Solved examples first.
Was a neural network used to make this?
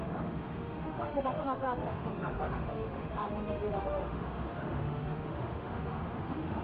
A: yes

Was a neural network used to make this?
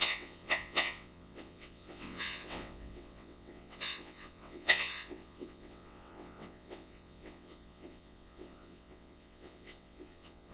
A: yes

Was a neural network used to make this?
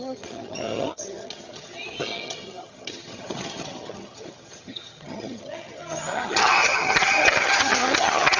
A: yes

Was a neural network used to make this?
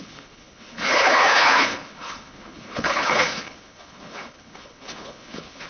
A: yes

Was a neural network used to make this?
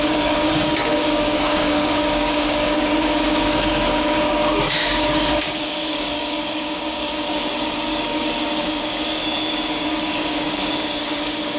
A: yes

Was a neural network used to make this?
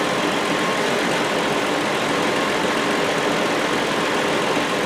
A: no